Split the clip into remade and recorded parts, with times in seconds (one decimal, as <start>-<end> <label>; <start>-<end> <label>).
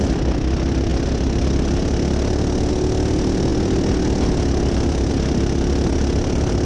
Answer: 0.0-6.7 recorded